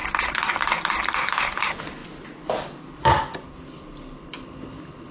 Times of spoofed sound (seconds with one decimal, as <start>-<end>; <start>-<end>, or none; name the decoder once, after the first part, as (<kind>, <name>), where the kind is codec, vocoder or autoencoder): 0.0-0.8 (vocoder, BigVGAN v2)